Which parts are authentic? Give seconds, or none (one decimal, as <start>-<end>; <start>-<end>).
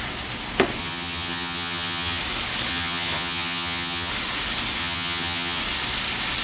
0.0-0.8; 2.2-2.7; 4.1-4.8; 5.6-6.4